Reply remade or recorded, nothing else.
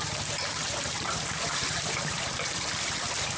remade